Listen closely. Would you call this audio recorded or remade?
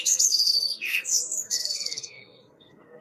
remade